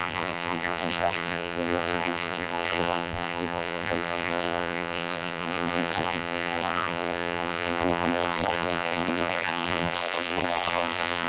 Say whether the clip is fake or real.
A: fake